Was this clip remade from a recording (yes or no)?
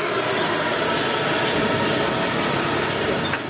no